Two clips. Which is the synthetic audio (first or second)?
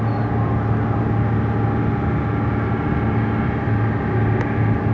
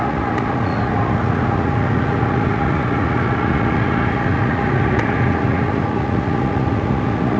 second